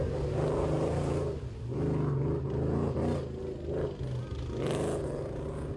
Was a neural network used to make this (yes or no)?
no